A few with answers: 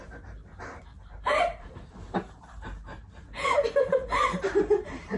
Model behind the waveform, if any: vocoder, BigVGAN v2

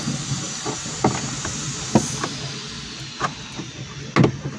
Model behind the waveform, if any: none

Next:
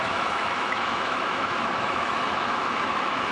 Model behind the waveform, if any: autoencoder, DAC-VAE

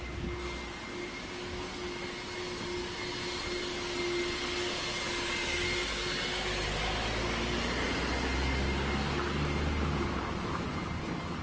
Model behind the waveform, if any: none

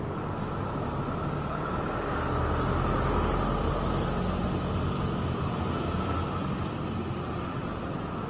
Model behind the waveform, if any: none